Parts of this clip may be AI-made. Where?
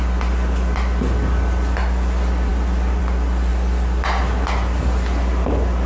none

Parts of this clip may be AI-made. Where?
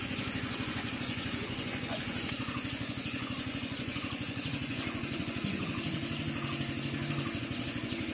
0.0-6.0 (vocoder, Vocos); 7.4-8.1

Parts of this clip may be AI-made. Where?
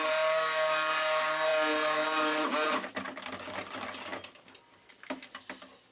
none